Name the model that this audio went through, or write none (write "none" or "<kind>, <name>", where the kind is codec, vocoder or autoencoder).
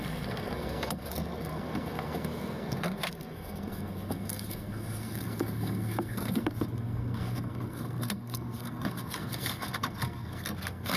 codec, SNAC